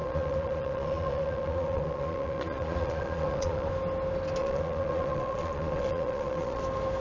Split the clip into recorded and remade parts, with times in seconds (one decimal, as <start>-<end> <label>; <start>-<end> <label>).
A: 0.0-3.7 remade; 3.7-4.4 recorded; 4.4-6.6 remade; 6.6-7.0 recorded